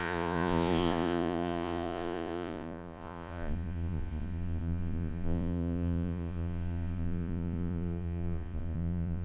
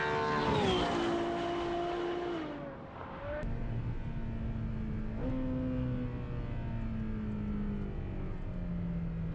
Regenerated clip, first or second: first